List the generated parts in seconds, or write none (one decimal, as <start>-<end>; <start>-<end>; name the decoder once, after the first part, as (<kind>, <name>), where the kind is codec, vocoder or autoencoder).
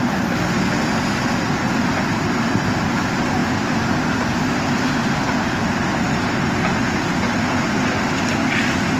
none